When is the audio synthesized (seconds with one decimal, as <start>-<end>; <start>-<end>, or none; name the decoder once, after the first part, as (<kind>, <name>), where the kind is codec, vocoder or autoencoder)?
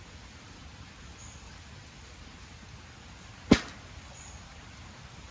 none